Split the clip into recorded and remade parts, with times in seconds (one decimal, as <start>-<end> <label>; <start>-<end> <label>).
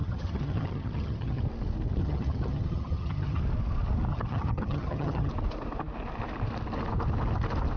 0.0-1.4 remade; 1.4-2.0 recorded; 2.0-3.4 remade; 3.4-4.1 recorded; 4.1-5.3 remade; 5.3-7.8 recorded